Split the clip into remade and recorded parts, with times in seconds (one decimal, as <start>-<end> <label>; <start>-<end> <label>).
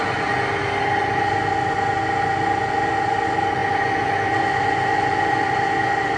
0.0-6.2 recorded